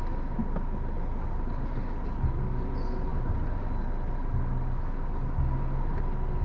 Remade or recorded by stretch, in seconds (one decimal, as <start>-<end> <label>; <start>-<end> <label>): 0.0-6.4 recorded